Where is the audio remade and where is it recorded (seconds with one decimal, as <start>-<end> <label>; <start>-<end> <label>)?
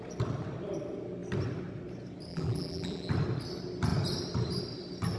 0.0-2.3 recorded; 2.3-3.1 remade; 3.1-5.2 recorded